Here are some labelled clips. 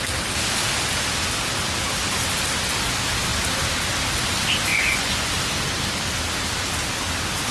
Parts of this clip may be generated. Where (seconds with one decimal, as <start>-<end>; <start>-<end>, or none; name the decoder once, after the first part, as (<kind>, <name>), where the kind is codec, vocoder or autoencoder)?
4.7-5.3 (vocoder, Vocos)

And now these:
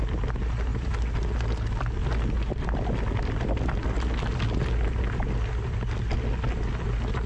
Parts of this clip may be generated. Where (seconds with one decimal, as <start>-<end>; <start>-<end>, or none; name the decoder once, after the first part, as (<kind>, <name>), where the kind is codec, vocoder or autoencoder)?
none

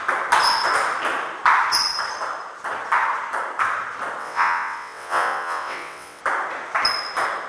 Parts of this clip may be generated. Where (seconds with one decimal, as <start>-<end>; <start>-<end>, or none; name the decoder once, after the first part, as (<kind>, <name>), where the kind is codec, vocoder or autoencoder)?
4.2-6.2 (vocoder, WaveNeXt)

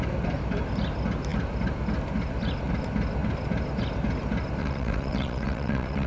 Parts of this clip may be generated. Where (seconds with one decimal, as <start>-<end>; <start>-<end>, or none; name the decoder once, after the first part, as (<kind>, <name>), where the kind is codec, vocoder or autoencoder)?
4.6-6.1 (vocoder, WaveNeXt)